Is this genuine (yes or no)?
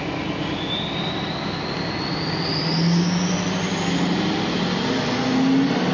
yes